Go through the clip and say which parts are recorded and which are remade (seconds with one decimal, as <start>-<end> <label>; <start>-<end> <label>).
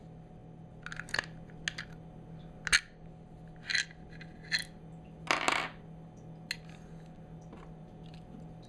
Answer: 0.0-8.7 recorded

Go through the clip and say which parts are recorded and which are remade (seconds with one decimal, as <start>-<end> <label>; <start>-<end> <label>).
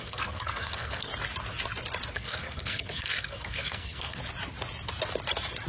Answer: 0.0-1.1 remade; 1.1-2.1 recorded; 2.1-4.2 remade; 4.2-5.7 recorded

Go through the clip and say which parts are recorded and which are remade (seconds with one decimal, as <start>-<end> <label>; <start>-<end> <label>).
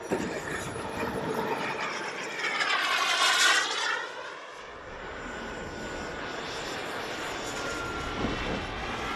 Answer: 0.0-9.2 recorded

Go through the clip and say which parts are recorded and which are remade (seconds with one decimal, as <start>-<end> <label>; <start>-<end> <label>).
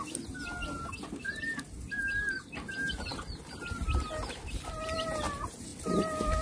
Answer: 0.0-6.4 recorded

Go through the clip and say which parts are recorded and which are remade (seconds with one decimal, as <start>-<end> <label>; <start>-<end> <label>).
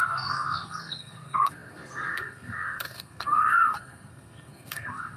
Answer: 0.0-5.2 remade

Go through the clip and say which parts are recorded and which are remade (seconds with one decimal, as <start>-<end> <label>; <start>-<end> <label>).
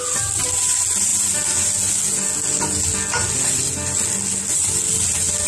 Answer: 0.0-5.5 recorded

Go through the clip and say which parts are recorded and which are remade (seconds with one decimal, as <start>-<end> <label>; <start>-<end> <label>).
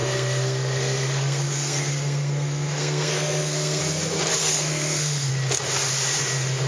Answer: 0.0-3.8 remade; 3.8-4.4 recorded; 4.4-5.3 remade; 5.3-6.7 recorded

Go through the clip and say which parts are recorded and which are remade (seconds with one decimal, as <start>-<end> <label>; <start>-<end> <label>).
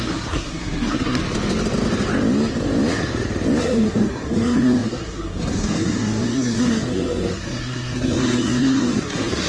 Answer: 0.0-1.2 remade; 1.2-3.6 recorded; 3.6-9.5 remade